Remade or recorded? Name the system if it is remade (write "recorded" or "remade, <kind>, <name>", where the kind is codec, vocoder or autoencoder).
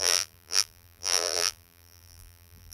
remade, vocoder, BigVGAN v2